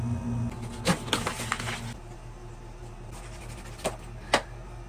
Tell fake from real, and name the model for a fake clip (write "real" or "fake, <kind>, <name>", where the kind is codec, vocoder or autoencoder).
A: real